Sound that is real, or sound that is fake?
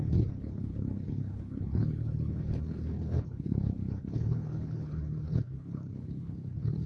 fake